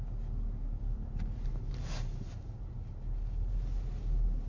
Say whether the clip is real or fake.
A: real